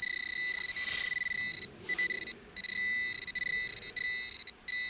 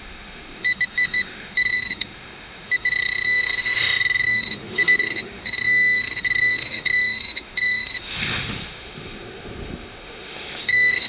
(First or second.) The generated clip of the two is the second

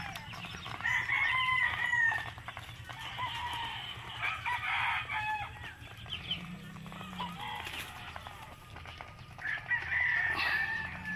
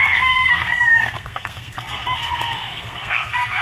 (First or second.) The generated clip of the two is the second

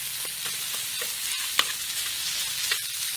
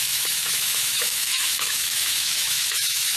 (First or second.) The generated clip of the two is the second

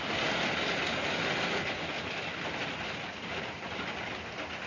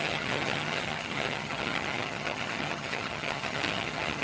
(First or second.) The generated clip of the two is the second